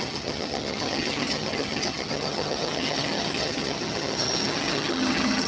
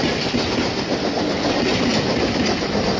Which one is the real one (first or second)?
second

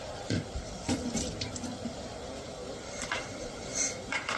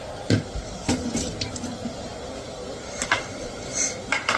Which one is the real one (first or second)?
second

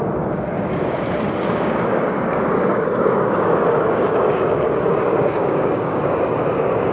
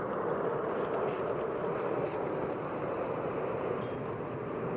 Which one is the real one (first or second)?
second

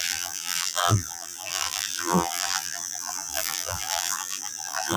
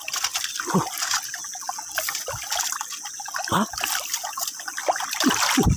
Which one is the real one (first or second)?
second